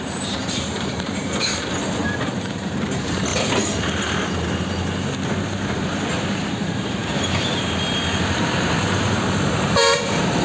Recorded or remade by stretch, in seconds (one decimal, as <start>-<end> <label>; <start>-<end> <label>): 0.0-2.0 remade; 2.0-2.5 recorded; 2.5-3.3 remade; 3.3-6.1 recorded; 6.1-10.4 remade